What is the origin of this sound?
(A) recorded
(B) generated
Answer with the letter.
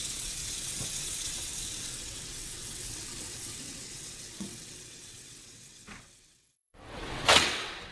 B